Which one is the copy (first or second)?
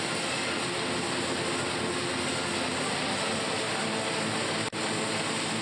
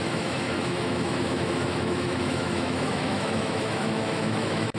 second